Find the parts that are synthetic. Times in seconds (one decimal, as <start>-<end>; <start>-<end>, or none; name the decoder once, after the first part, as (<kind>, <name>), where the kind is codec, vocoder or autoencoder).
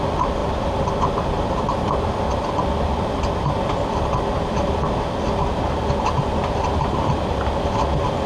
none